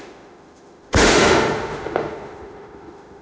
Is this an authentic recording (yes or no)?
no